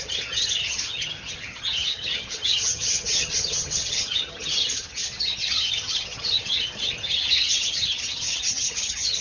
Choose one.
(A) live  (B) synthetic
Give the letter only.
B